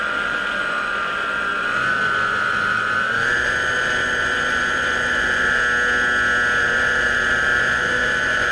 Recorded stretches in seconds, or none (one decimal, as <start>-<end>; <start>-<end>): 5.6-6.6